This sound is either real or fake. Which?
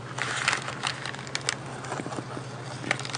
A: real